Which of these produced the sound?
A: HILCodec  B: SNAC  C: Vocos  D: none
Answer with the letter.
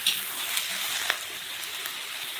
D